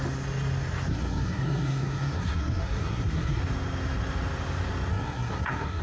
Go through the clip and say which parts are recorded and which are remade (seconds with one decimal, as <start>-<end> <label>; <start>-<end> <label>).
0.0-0.9 recorded; 0.9-3.4 remade; 3.4-4.9 recorded; 4.9-5.8 remade